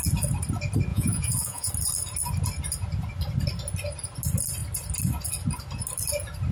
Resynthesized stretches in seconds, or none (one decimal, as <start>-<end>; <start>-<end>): 0.9-1.7